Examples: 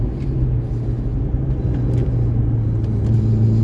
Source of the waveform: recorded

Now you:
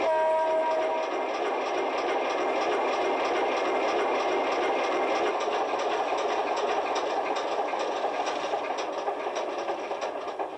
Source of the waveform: recorded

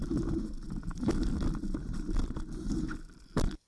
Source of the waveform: remade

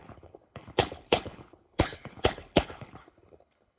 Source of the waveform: remade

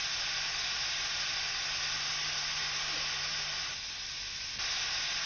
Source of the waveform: recorded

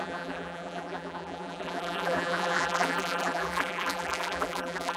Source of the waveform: remade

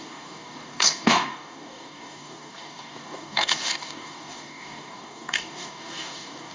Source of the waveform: remade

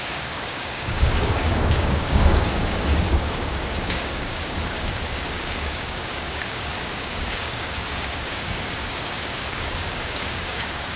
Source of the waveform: remade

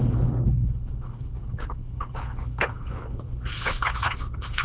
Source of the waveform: remade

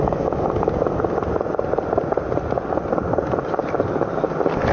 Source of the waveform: recorded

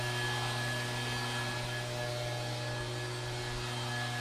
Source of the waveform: recorded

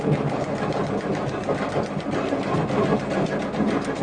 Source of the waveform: recorded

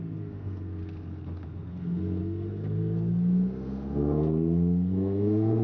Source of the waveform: remade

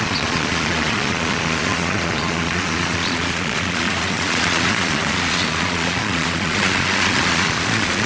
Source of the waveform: remade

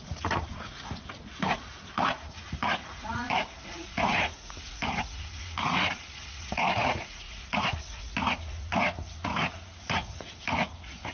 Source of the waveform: remade